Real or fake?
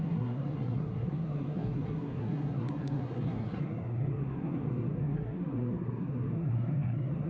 fake